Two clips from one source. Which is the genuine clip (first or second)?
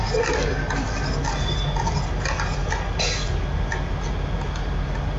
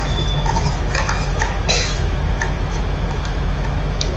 first